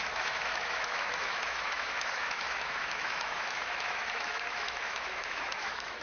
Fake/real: fake